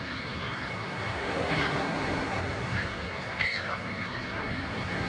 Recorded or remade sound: remade